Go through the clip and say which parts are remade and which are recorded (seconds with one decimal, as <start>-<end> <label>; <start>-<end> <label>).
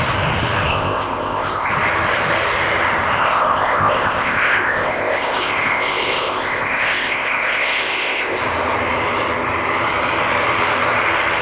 0.0-0.7 recorded; 0.7-1.7 remade; 1.7-3.2 recorded; 3.2-8.4 remade; 8.4-11.4 recorded